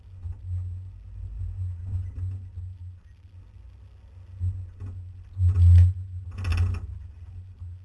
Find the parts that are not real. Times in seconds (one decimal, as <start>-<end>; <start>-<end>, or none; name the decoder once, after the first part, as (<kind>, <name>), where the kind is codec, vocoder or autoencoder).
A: none